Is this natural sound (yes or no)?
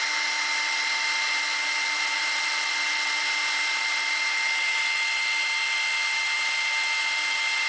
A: yes